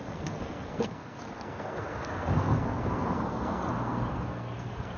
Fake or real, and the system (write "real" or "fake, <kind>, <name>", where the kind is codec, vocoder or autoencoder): fake, codec, SNAC